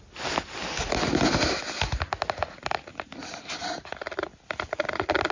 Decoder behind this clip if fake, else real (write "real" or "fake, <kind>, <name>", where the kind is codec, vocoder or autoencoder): real